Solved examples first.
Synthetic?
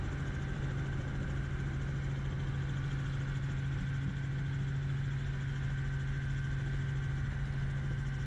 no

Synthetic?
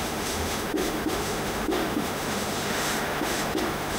yes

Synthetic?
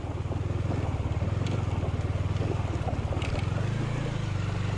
no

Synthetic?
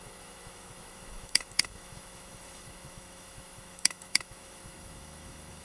yes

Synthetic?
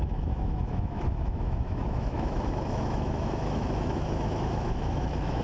yes